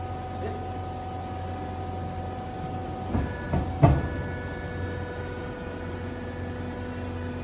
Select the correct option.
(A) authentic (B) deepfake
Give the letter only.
A